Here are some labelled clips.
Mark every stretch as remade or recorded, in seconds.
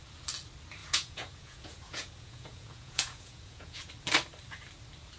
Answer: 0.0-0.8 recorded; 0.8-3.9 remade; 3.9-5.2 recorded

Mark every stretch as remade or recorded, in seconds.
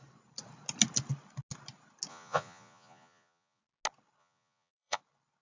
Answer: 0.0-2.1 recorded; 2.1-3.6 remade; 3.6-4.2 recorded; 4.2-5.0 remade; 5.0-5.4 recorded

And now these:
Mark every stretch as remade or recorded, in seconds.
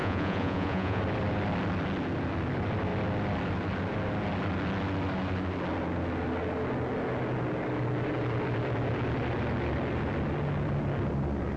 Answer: 0.0-1.0 remade; 1.0-11.6 recorded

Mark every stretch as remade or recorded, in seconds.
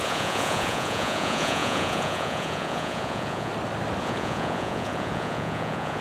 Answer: 0.0-3.5 remade; 3.5-4.0 recorded; 4.0-6.0 remade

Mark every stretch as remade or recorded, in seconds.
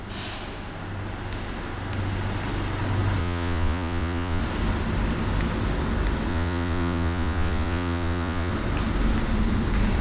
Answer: 0.0-3.2 recorded; 3.2-4.4 remade; 4.4-6.3 recorded; 6.3-8.5 remade; 8.5-10.0 recorded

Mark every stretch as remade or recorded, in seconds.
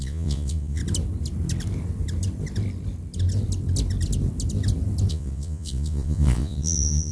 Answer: 0.0-0.8 remade; 0.8-5.1 recorded; 5.1-7.1 remade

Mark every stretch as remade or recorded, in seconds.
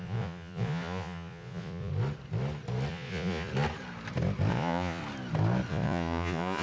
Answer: 0.0-1.9 remade; 1.9-2.9 recorded; 2.9-3.5 remade; 3.5-4.5 recorded; 4.5-5.0 remade; 5.0-5.7 recorded; 5.7-6.6 remade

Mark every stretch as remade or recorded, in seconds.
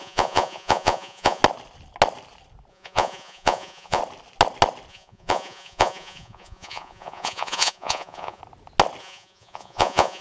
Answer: 0.0-1.4 remade; 1.4-2.7 recorded; 2.7-4.0 remade; 4.0-4.9 recorded; 4.9-8.4 remade; 8.4-9.0 recorded; 9.0-10.2 remade